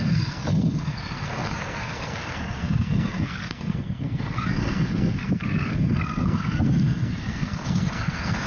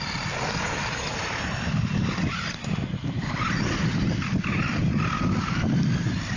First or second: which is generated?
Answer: first